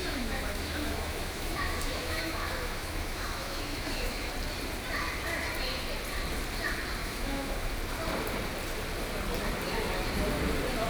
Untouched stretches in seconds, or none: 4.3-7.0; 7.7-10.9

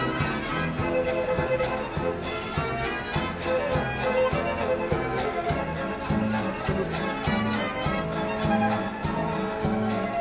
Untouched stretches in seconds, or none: 0.0-10.2

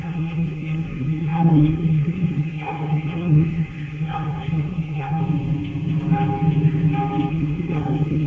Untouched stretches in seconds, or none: 5.2-7.3

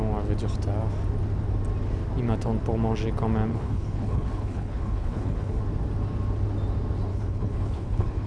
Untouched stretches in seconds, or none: 0.0-3.5; 5.6-7.1

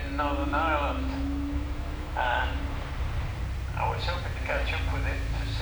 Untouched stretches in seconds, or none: 0.0-0.4; 2.6-4.9

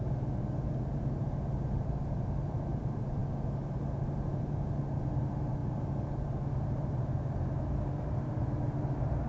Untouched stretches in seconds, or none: 3.2-4.4